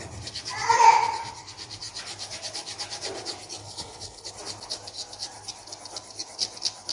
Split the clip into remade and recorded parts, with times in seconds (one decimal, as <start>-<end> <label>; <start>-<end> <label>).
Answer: 0.0-3.6 recorded; 3.6-4.3 remade; 4.3-6.9 recorded